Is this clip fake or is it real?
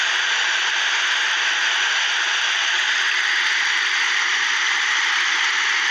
real